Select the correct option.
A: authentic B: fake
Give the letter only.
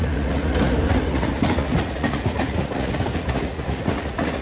B